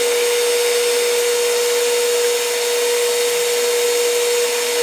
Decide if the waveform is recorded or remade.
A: recorded